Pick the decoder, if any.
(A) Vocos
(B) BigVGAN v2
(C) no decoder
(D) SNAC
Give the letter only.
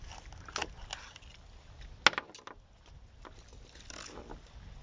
C